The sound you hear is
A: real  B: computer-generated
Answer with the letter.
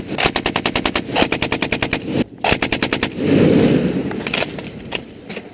A